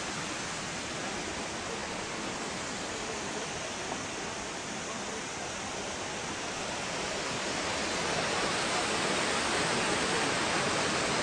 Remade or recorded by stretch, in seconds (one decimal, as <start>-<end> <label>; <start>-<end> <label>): 0.0-11.2 recorded